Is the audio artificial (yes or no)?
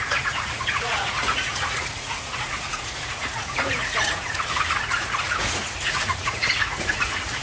yes